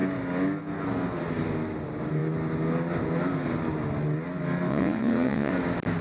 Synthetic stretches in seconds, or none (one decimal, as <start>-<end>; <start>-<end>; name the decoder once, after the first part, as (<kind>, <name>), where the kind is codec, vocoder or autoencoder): 4.7-5.5 (vocoder, WaveNeXt)